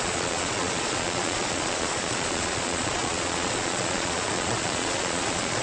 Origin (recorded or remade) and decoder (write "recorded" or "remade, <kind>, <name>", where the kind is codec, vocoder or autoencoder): remade, vocoder, Vocos